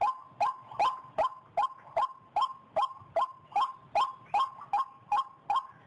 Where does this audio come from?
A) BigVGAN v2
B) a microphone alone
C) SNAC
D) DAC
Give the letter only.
B